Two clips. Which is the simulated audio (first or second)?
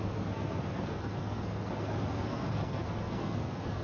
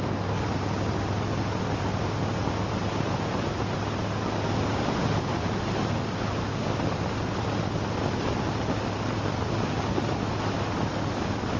first